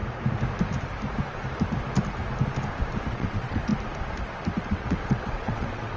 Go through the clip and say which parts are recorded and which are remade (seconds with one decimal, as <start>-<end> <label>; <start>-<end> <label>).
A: 0.0-3.1 recorded; 3.1-3.7 remade; 3.7-4.6 recorded; 4.6-6.0 remade